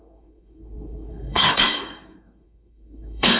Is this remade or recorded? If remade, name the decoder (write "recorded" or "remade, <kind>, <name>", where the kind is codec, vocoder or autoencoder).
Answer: remade, codec, SNAC